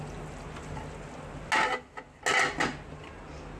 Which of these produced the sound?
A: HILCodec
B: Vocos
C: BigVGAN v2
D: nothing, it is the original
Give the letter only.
D